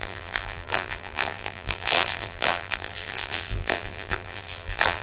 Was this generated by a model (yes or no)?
yes